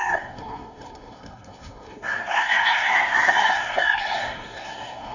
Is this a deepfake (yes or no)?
yes